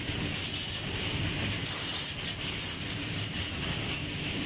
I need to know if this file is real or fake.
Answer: real